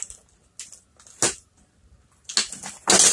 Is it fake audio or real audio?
real